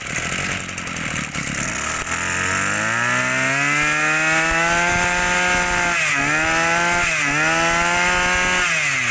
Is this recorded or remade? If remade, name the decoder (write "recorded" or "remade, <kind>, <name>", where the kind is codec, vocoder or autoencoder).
recorded